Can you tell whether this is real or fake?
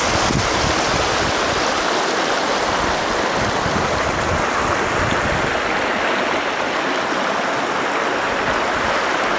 real